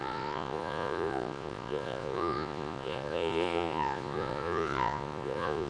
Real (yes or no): no